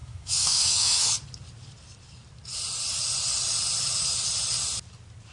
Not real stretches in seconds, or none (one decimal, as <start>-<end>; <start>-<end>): 0.0-1.1